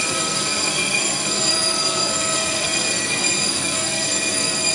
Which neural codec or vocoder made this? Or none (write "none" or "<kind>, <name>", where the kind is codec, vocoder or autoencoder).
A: codec, SNAC